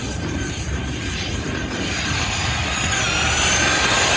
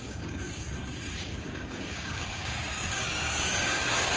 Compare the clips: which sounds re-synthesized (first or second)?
second